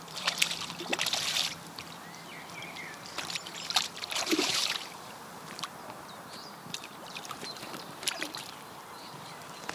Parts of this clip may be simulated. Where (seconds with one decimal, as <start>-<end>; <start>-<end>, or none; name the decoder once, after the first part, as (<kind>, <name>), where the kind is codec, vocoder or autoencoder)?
0.0-0.9 (vocoder, BigVGAN v2); 3.0-9.7